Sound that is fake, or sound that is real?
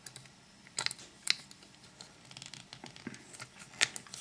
real